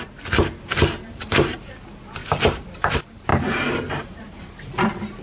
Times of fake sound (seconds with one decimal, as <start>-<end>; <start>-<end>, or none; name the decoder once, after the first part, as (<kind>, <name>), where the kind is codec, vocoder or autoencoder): 1.0-1.7 (vocoder, BigVGAN v2)